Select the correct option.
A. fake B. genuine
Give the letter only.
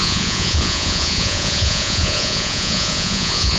A